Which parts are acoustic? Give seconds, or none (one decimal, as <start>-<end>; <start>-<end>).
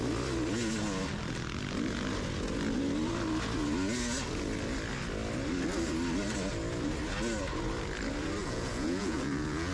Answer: 0.0-8.4